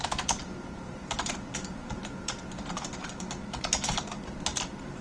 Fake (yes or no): yes